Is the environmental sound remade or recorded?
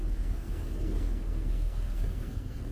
remade